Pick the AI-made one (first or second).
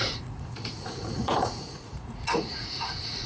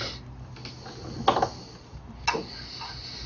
first